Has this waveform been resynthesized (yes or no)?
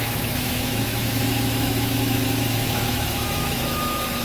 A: yes